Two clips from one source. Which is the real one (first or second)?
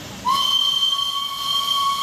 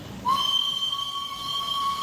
first